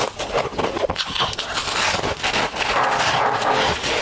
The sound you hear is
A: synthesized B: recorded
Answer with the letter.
B